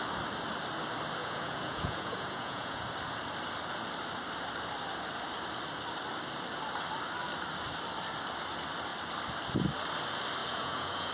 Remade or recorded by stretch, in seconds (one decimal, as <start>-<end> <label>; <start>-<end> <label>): 0.0-1.2 recorded; 1.2-2.8 remade; 2.8-10.4 recorded; 10.4-11.1 remade